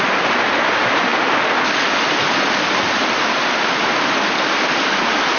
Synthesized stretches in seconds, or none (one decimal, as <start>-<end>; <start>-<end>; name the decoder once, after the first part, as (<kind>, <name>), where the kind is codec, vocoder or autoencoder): none